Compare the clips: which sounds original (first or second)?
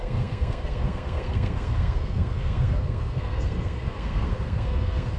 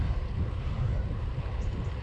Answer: second